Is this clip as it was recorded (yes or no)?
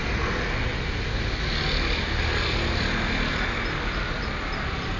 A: yes